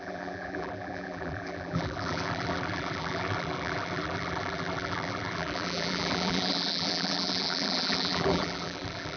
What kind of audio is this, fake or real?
fake